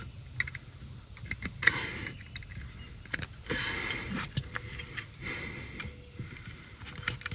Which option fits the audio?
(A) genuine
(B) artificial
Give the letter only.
A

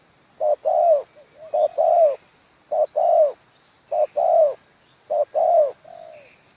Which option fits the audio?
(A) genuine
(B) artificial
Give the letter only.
A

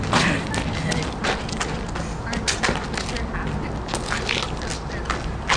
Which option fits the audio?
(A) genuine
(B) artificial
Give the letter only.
A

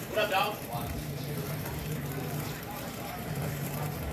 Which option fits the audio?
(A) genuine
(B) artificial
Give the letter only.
B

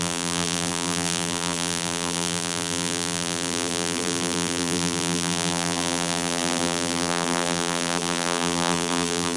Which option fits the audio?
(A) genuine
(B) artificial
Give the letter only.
B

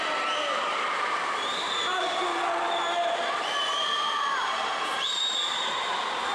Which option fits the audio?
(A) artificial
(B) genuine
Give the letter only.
A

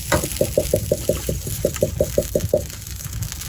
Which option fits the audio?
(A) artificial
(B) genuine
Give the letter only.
B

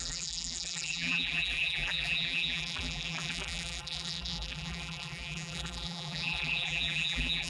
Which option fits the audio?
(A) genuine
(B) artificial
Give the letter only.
B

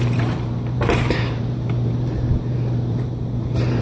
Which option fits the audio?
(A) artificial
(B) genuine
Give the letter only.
A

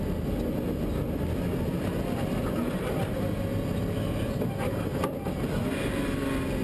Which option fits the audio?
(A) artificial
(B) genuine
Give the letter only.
B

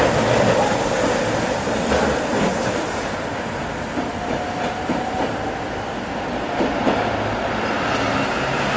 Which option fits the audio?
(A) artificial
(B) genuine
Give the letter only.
B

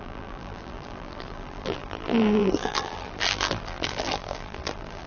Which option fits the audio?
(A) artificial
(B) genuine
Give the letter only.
A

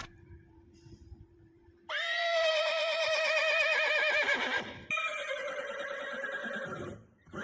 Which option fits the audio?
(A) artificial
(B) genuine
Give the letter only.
A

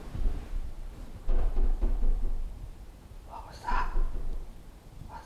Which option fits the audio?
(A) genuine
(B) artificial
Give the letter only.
B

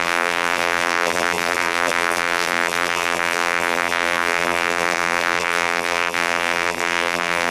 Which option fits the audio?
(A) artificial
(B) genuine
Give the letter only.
A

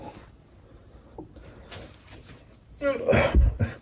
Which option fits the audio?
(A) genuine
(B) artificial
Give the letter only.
A